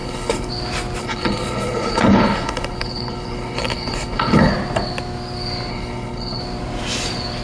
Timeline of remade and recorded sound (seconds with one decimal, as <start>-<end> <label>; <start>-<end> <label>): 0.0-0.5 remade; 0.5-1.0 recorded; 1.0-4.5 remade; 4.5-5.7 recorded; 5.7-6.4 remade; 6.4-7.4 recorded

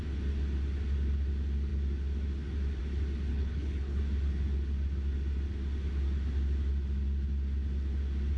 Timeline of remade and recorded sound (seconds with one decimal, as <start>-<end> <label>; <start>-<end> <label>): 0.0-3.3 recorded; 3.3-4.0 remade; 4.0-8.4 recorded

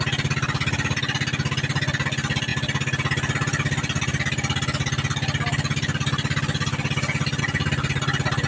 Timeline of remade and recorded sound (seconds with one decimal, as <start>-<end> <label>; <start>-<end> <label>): 0.0-8.5 recorded

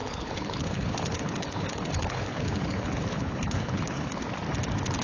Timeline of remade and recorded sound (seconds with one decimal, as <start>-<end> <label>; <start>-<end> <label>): 0.0-4.2 remade; 4.2-5.0 recorded